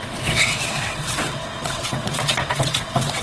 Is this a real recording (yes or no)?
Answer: no